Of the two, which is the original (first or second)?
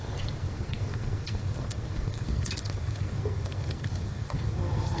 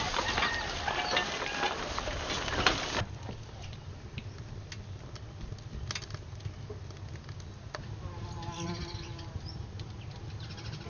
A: second